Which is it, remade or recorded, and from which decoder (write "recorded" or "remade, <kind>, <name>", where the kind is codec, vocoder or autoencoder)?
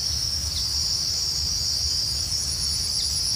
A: recorded